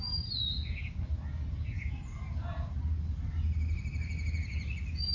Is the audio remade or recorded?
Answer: recorded